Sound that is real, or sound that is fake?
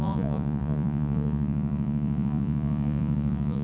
fake